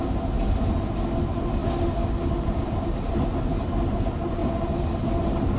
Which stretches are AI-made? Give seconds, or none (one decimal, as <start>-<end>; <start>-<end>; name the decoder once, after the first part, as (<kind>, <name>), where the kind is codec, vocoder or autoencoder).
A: none